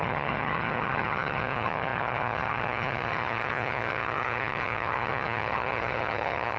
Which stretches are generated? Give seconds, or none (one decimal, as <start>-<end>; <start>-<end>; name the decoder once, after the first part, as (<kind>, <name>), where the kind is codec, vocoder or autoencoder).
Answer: 0.0-6.6 (vocoder, HiFi-GAN)